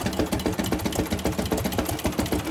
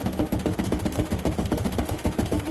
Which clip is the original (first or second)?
first